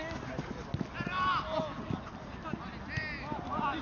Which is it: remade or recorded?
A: recorded